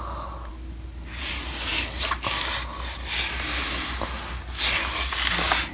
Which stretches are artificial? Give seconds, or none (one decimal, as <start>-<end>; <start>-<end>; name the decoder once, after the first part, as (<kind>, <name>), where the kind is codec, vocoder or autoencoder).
none